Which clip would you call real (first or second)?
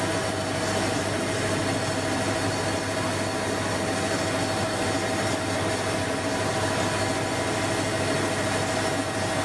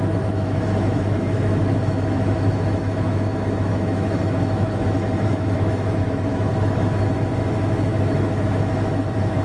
first